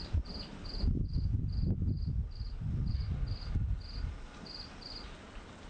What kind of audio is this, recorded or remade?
recorded